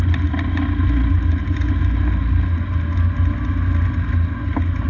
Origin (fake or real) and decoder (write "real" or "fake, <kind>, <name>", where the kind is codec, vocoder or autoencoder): real